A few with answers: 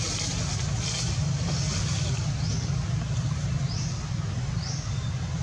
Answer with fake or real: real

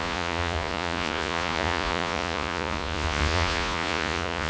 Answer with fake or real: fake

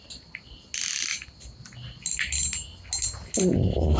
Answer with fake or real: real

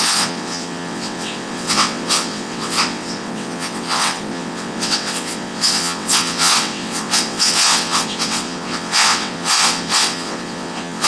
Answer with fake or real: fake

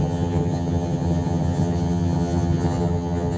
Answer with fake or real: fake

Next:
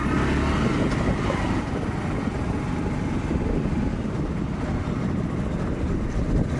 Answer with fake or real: real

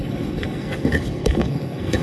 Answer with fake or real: fake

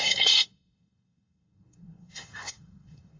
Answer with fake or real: fake